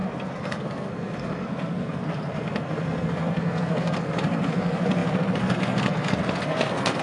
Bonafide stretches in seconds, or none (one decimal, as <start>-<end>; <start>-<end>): none